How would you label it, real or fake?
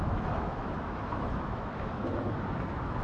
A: fake